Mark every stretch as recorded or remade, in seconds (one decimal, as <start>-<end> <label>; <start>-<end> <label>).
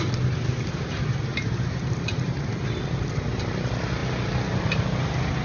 0.0-1.3 recorded; 1.3-2.7 remade; 2.7-5.4 recorded